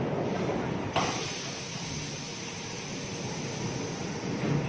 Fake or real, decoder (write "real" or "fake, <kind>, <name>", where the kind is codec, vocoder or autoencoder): fake, vocoder, BigVGAN v2